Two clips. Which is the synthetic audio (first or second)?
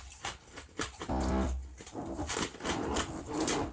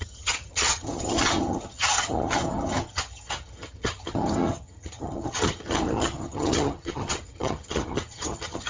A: second